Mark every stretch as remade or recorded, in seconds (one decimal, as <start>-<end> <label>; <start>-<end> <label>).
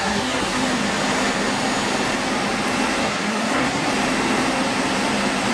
0.0-0.6 remade; 0.6-3.0 recorded; 3.0-3.9 remade; 3.9-5.5 recorded